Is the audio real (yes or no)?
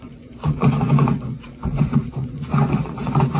no